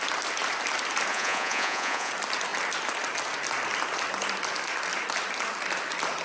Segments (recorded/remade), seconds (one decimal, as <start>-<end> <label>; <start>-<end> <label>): 0.0-1.1 recorded; 1.1-2.1 remade; 2.1-6.2 recorded